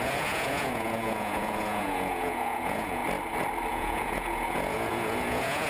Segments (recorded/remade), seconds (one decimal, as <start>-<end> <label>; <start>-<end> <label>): 0.0-3.0 remade; 3.0-3.7 recorded; 3.7-5.7 remade